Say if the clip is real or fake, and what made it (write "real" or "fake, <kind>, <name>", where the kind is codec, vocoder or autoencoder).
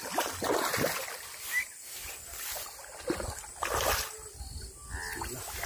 real